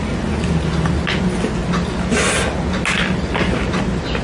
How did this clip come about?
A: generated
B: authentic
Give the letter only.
B